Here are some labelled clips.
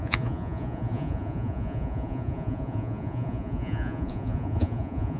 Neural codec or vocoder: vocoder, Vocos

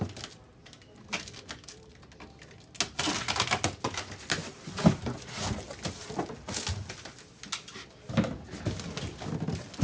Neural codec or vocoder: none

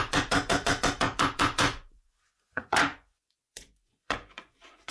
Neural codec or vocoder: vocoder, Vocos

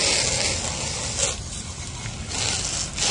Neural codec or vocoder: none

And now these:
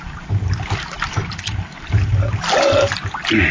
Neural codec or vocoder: none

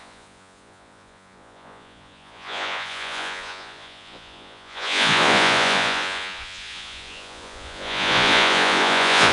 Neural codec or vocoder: vocoder, Vocos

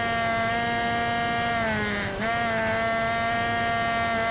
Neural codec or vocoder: none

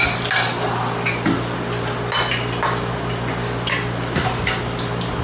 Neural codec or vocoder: none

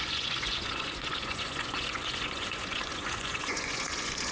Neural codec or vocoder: vocoder, Vocos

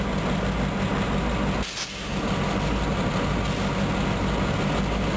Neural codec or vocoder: none